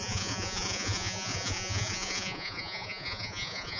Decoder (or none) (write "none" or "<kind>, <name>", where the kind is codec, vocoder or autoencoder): vocoder, Vocos